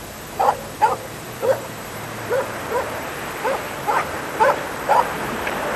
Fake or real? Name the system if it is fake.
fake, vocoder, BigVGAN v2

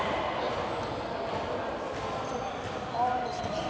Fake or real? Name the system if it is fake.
real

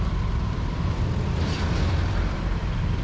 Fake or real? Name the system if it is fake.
fake, vocoder, BigVGAN v2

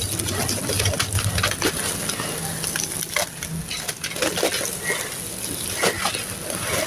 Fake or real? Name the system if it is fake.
real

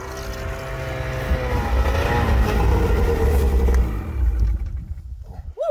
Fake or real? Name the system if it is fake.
real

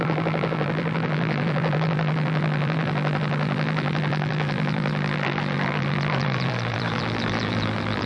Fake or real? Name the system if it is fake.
fake, vocoder, BigVGAN v2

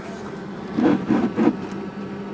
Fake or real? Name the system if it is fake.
real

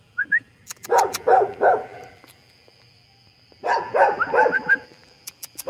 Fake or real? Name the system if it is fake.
fake, vocoder, BigVGAN v2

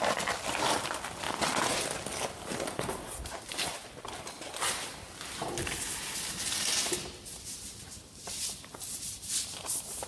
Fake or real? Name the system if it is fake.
real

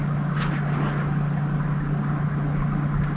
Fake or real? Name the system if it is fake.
real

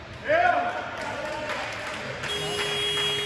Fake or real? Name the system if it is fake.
real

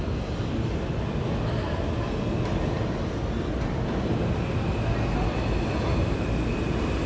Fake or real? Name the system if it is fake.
real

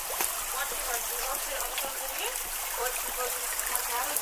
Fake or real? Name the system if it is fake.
fake, vocoder, BigVGAN v2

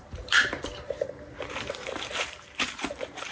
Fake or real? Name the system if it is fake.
fake, vocoder, BigVGAN v2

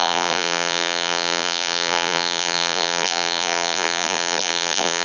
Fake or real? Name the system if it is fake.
fake, vocoder, BigVGAN v2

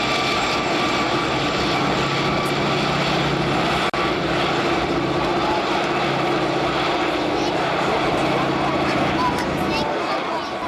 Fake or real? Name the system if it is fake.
real